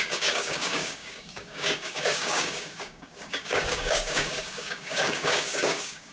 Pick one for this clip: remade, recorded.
remade